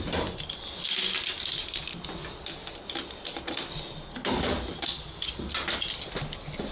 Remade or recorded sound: recorded